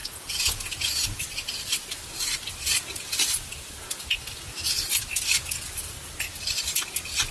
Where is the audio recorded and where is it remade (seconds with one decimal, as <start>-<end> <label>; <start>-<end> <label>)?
0.0-1.2 remade; 1.2-7.3 recorded